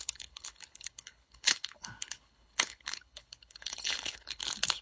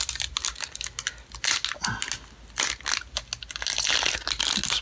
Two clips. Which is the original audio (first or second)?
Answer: second